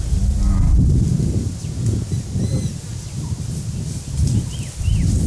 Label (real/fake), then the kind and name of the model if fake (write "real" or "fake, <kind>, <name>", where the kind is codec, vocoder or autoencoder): real